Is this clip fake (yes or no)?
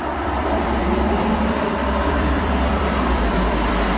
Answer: yes